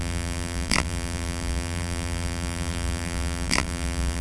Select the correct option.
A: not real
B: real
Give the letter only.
A